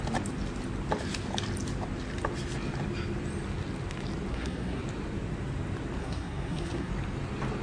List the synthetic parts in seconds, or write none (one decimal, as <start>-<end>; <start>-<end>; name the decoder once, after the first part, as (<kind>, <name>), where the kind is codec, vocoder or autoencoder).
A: 4.3-4.8 (codec, SNAC); 6.0-6.9